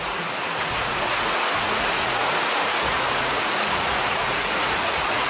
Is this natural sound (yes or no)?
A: no